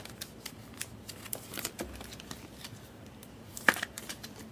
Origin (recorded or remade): remade